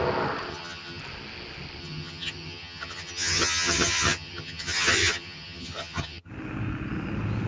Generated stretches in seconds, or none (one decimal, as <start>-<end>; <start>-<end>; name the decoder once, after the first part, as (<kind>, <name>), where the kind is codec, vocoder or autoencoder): 0.5-1.0 (vocoder, HiFi-GAN); 1.8-6.3